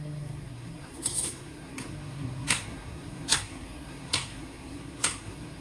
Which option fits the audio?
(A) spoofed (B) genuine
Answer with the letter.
A